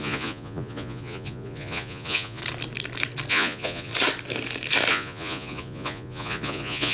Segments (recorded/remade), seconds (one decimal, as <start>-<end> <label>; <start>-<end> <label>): 0.0-2.4 remade; 2.4-3.3 recorded; 3.3-3.9 remade; 3.9-4.9 recorded; 4.9-6.9 remade